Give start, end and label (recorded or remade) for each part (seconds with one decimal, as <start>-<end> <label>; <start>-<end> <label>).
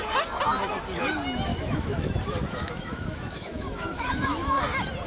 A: 0.0-1.5 recorded; 1.5-4.6 remade; 4.6-5.1 recorded